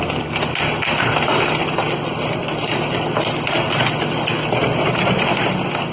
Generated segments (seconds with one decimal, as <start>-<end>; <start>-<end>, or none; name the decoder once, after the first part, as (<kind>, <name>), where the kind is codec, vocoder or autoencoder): none